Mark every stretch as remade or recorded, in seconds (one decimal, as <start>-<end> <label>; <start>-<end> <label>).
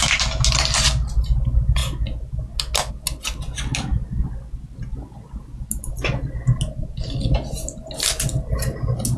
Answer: 0.0-9.2 recorded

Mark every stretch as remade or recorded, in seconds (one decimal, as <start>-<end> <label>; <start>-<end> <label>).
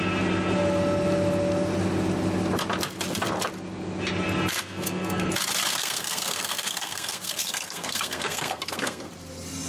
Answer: 0.0-4.5 recorded; 4.5-5.3 remade; 5.3-5.7 recorded; 5.7-9.1 remade; 9.1-9.7 recorded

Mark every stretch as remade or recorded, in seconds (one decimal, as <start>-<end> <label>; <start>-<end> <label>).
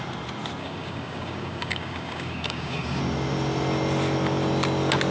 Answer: 0.0-0.6 recorded; 0.6-3.0 remade; 3.0-5.1 recorded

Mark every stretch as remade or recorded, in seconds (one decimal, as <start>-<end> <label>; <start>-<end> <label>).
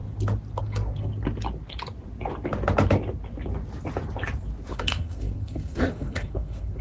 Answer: 0.0-0.6 recorded; 0.6-1.1 remade; 1.1-4.7 recorded; 4.7-6.8 remade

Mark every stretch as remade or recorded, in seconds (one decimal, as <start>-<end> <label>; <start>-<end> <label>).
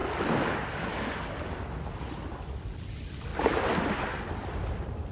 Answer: 0.0-5.1 recorded